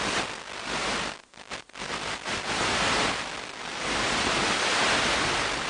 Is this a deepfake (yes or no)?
no